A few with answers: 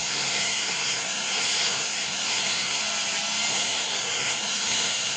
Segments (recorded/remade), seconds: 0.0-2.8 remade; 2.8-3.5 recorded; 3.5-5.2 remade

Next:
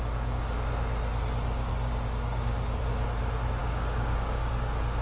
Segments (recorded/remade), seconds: 0.0-1.7 recorded; 1.7-2.8 remade; 2.8-3.6 recorded; 3.6-4.5 remade; 4.5-5.0 recorded

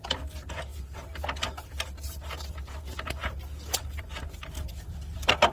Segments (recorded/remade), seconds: 0.0-5.5 remade

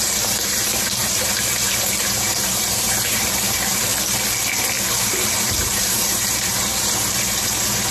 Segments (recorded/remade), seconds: 0.0-3.9 remade; 3.9-5.3 recorded; 5.3-7.9 remade

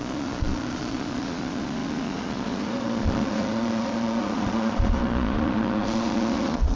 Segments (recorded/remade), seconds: 0.0-6.8 remade